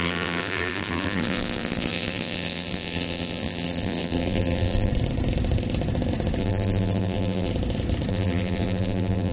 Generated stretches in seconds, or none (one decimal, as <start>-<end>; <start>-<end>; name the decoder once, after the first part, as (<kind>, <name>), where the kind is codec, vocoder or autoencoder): 0.0-4.9 (vocoder, BigVGAN v2); 6.4-7.5; 8.1-9.3